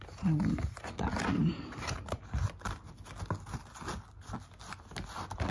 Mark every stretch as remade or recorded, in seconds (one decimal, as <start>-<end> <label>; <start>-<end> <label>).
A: 0.0-1.4 recorded; 1.4-2.9 remade; 2.9-5.5 recorded

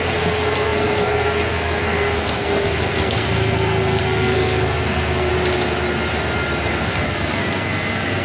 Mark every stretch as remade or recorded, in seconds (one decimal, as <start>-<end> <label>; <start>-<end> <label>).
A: 0.0-5.3 remade; 5.3-6.7 recorded; 6.7-8.2 remade

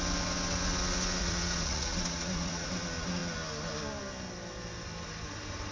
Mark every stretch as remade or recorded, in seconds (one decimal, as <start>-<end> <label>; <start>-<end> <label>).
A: 0.0-1.2 recorded; 1.2-2.7 remade; 2.7-5.7 recorded

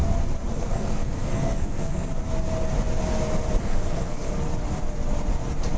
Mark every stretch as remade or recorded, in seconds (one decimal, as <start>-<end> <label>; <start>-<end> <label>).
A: 0.0-0.5 recorded; 0.5-2.1 remade; 2.1-3.6 recorded; 3.6-4.3 remade; 4.3-5.8 recorded